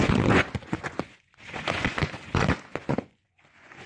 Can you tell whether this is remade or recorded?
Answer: remade